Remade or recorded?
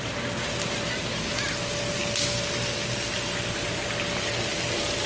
recorded